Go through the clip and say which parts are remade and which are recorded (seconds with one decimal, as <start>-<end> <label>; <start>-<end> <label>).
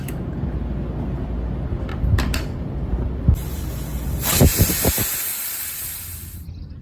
0.0-1.9 recorded; 1.9-3.6 remade; 3.6-4.5 recorded; 4.5-5.4 remade; 5.4-6.8 recorded